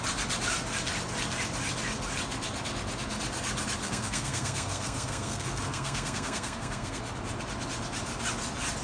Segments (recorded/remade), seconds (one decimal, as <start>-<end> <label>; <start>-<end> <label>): 0.0-3.8 recorded; 3.8-7.0 remade; 7.0-8.8 recorded